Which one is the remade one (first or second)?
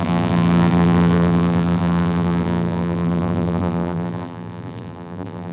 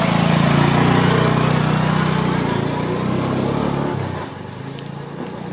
first